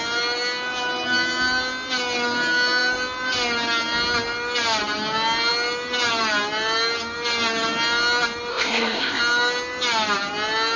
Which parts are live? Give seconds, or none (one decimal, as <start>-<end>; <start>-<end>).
0.0-8.5; 9.2-10.8